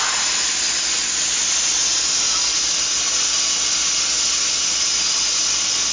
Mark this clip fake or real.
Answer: real